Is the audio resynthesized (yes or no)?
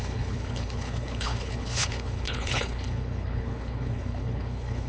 yes